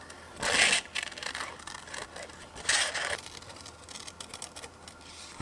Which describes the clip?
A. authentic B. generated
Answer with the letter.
A